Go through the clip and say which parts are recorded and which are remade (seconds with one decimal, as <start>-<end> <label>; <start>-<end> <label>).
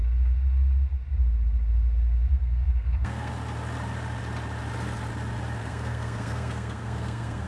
0.0-2.3 recorded; 2.3-3.3 remade; 3.3-5.6 recorded; 5.6-7.5 remade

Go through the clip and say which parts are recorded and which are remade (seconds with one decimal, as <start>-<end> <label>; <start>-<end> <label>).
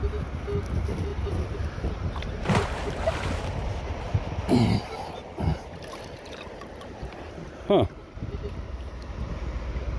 0.0-1.1 recorded; 1.1-4.2 remade; 4.2-5.5 recorded; 5.5-9.4 remade; 9.4-10.0 recorded